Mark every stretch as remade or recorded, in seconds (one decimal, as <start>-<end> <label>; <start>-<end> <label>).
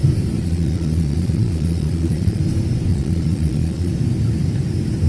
0.0-0.4 recorded; 0.4-2.4 remade; 2.4-2.9 recorded; 2.9-3.9 remade; 3.9-5.1 recorded